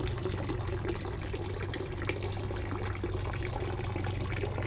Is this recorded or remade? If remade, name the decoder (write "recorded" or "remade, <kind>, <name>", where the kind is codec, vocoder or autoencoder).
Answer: recorded